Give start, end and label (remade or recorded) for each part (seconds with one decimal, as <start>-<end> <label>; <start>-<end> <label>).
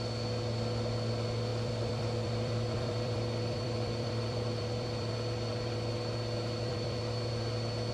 0.0-1.5 recorded; 1.5-5.1 remade; 5.1-5.5 recorded; 5.5-7.3 remade; 7.3-7.9 recorded